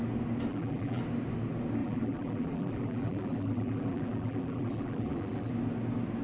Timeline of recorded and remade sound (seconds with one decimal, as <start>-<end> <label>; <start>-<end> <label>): 0.0-0.5 recorded; 0.5-1.0 remade; 1.0-1.8 recorded; 1.8-5.5 remade; 5.5-6.2 recorded